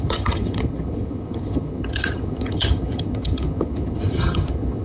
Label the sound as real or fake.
fake